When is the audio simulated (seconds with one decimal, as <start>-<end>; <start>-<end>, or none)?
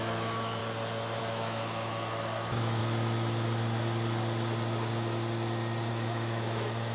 0.0-0.6; 1.2-2.8; 5.9-6.9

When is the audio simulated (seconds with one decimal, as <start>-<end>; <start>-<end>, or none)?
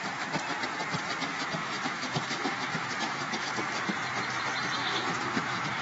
1.6-3.5; 4.8-5.8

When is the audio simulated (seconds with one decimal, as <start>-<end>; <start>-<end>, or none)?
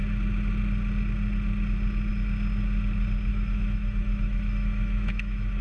3.3-5.6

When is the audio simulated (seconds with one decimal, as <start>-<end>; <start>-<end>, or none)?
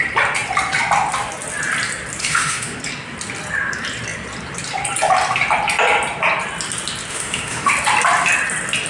2.2-2.8; 7.1-7.7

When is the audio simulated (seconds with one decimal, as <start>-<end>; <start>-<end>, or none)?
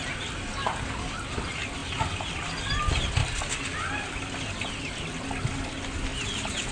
none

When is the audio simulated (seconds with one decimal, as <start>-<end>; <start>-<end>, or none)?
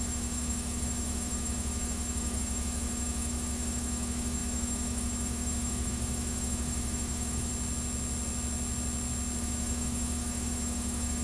0.0-7.5; 9.4-11.2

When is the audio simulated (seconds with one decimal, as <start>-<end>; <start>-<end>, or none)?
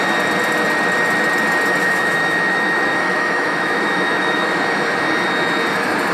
1.8-4.6